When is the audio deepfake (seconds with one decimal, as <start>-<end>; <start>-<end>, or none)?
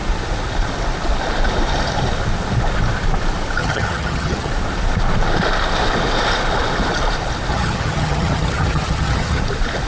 3.6-4.5; 7.5-9.4